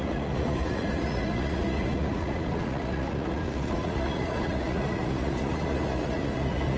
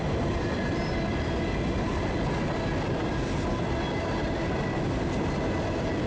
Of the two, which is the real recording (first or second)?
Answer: second